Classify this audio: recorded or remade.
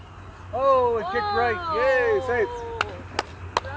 recorded